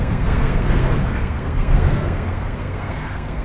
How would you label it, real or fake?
fake